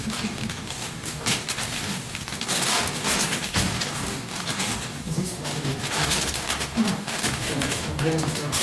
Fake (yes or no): yes